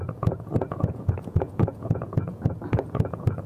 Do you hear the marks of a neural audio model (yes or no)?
yes